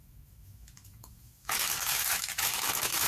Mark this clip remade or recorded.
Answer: remade